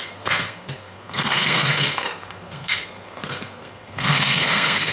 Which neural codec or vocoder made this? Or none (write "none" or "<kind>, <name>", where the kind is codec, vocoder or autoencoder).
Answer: codec, SNAC